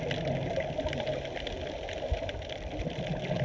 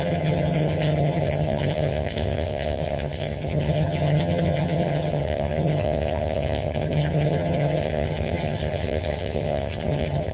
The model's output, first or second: second